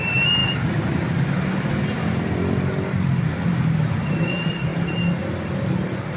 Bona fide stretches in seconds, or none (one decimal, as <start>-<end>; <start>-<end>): 0.0-6.2